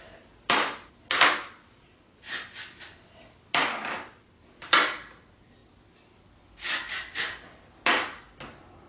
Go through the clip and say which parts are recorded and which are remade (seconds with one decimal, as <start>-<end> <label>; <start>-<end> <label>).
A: 0.0-8.9 recorded